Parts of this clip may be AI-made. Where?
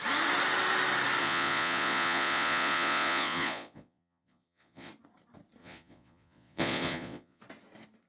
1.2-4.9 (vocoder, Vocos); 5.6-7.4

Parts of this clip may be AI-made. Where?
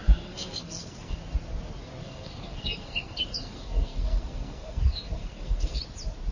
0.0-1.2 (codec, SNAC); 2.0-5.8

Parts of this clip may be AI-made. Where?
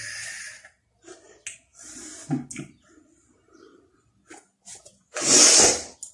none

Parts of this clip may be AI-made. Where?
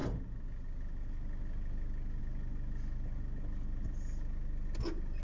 none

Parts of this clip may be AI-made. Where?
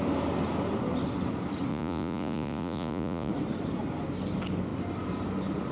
1.7-3.3 (vocoder, Vocos)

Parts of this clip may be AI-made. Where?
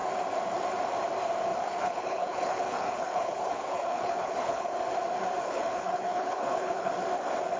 1.5-4.7 (codec, HILCodec); 5.4-6.9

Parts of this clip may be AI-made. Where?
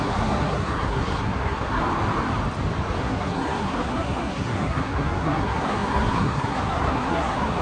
0.0-1.8 (codec, SNAC); 3.0-7.6